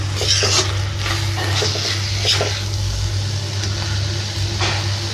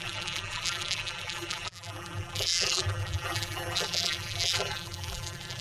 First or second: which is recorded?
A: first